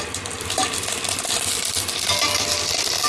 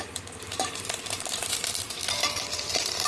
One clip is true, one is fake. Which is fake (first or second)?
second